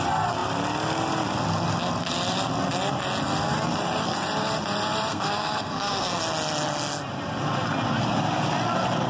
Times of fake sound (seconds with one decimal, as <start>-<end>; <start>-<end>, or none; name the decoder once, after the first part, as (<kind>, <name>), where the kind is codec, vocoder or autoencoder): 5.1-6.2 (codec, SNAC)